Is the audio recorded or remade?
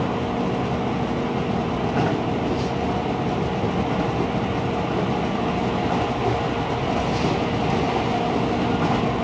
recorded